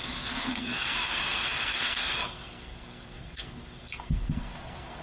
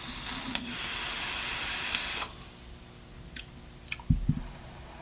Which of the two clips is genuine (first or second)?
second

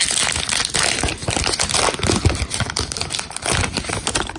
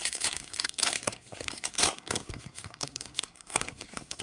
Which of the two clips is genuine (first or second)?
first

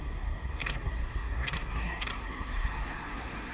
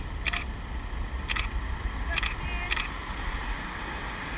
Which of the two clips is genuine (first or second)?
second